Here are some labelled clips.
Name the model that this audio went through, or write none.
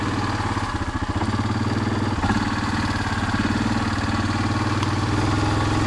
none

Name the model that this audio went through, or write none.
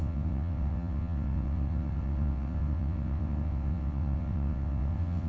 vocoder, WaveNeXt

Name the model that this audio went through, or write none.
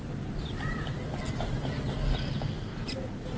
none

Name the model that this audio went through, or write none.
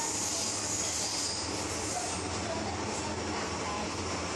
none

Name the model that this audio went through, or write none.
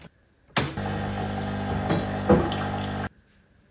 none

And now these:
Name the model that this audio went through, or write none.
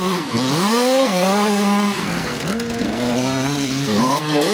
codec, SNAC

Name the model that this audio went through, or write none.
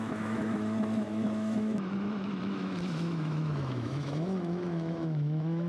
autoencoder, DAC-VAE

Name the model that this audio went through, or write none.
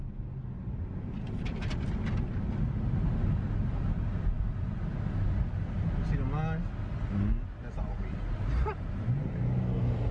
none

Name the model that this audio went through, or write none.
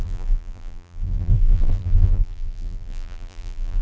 vocoder, BigVGAN v2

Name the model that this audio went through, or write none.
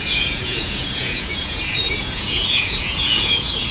vocoder, Vocos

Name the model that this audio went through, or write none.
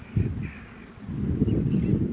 none